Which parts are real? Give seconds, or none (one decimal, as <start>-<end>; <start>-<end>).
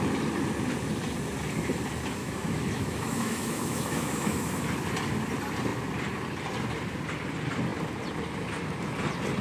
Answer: 0.0-2.2; 4.6-9.4